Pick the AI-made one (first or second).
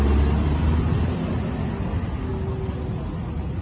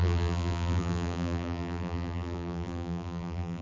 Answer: second